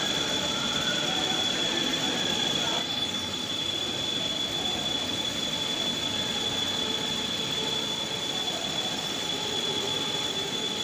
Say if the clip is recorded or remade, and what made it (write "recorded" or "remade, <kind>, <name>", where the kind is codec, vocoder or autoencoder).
recorded